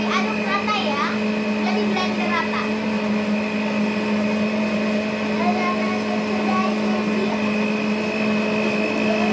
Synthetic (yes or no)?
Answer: no